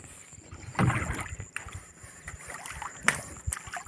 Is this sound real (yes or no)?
yes